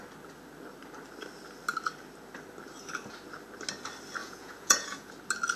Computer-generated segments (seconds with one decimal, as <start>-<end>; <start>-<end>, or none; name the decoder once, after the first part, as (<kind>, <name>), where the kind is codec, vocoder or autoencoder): 4.2-5.1 (vocoder, Vocos)